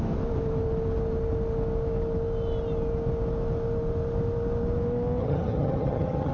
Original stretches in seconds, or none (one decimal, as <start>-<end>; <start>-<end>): 0.0-5.2